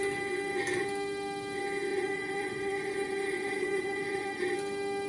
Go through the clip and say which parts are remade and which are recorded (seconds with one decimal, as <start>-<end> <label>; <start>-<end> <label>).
0.0-1.9 recorded; 1.9-4.4 remade; 4.4-5.1 recorded